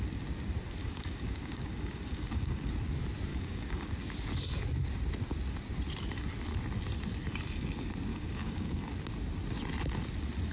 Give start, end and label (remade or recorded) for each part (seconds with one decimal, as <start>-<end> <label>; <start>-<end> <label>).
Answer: 0.0-0.8 recorded; 0.8-2.7 remade; 2.7-3.3 recorded; 3.3-3.9 remade; 3.9-8.1 recorded; 8.1-8.8 remade; 8.8-10.5 recorded